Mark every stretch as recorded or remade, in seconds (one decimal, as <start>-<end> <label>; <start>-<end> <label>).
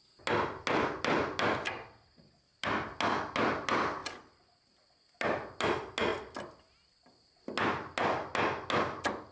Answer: 0.0-9.3 recorded